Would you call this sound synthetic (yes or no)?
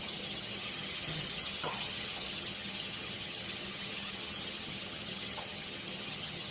yes